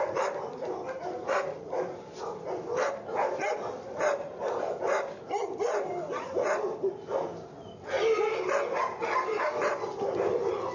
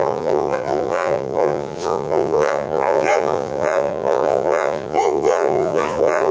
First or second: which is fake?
second